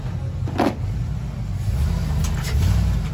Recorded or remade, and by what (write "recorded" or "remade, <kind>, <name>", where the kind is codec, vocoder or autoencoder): recorded